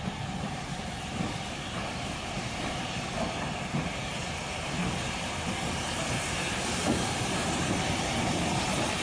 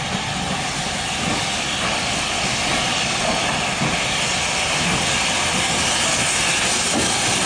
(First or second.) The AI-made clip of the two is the first